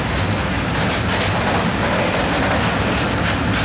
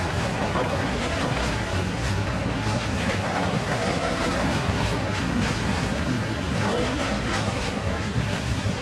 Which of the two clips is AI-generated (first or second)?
second